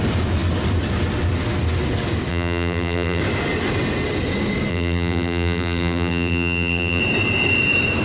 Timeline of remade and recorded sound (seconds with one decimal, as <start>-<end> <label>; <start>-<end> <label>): 0.0-2.3 recorded; 2.3-3.2 remade; 3.2-4.7 recorded; 4.7-7.0 remade; 7.0-8.0 recorded